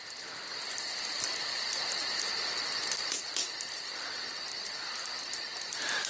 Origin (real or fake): real